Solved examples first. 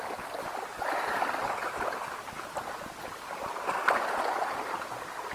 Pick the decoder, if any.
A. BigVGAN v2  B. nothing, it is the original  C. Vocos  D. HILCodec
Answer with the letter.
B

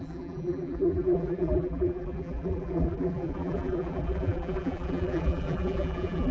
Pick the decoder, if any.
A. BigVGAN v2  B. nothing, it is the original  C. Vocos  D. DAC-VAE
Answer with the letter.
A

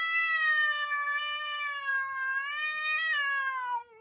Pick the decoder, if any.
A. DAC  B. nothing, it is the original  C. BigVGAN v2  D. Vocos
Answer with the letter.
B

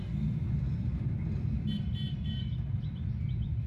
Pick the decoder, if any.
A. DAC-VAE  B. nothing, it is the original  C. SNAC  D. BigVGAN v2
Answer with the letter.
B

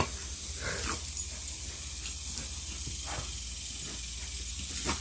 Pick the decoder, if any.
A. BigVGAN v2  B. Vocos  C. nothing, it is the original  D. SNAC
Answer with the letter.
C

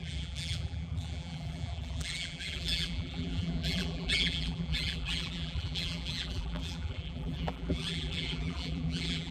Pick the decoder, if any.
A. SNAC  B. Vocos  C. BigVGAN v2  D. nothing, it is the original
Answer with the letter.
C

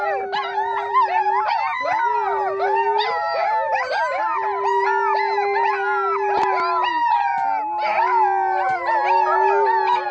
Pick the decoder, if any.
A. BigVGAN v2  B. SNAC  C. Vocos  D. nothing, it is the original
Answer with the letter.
D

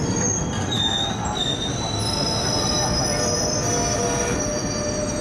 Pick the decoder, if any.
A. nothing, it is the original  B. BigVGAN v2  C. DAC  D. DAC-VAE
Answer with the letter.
A